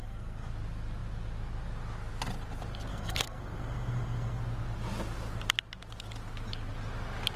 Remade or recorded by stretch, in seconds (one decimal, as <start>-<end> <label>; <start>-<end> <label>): 0.0-0.5 remade; 0.5-2.9 recorded; 2.9-4.4 remade; 4.4-7.4 recorded